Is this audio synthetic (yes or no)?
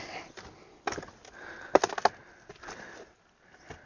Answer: no